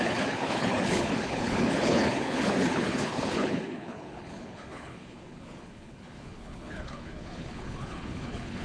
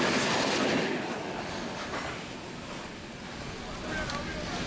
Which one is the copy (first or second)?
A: first